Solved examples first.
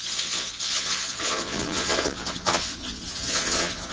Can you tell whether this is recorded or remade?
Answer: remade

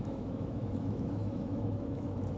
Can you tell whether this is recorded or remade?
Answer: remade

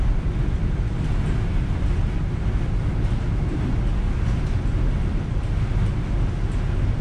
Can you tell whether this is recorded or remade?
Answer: recorded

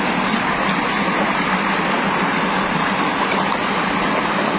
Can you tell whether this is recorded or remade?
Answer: recorded